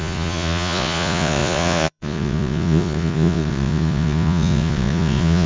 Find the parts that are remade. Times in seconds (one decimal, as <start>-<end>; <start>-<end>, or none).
0.0-5.5